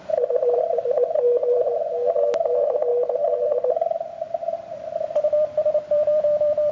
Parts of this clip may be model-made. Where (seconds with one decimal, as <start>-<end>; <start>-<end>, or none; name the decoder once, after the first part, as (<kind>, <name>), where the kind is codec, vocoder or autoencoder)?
0.0-6.7 (vocoder, BigVGAN v2)